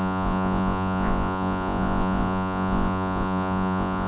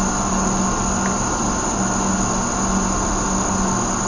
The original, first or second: second